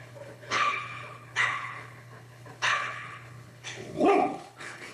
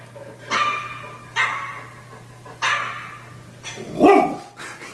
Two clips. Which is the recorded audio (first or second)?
second